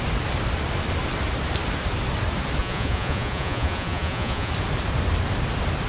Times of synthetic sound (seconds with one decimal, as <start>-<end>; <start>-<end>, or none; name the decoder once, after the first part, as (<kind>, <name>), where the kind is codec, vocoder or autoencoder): 2.6-4.5 (vocoder, Vocos)